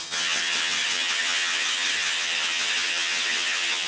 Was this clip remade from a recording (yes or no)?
yes